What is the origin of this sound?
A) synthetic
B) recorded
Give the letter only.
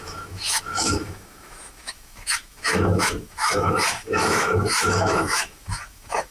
A